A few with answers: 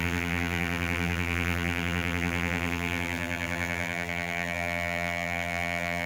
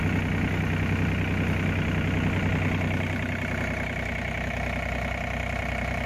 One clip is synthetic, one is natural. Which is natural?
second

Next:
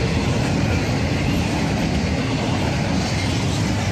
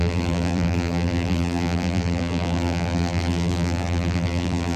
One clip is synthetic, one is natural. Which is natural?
first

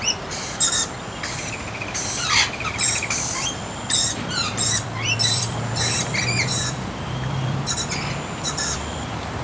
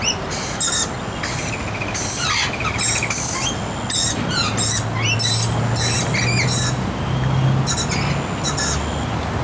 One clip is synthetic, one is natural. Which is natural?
second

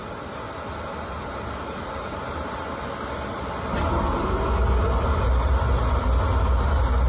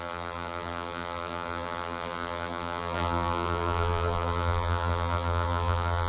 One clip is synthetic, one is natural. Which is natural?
first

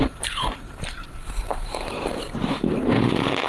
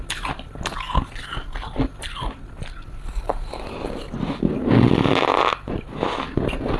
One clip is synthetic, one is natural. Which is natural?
second